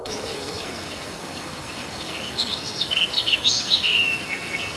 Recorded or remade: remade